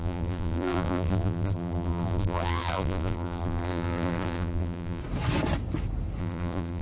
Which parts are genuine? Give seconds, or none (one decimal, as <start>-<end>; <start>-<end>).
5.0-6.2